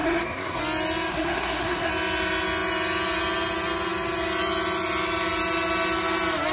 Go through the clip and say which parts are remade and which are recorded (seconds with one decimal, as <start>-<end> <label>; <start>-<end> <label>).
0.0-0.6 remade; 0.6-1.1 recorded; 1.1-1.9 remade; 1.9-6.5 recorded